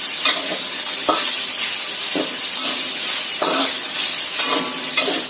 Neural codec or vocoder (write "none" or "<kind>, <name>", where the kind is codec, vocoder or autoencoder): none